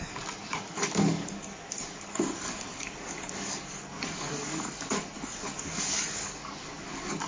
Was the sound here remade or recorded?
remade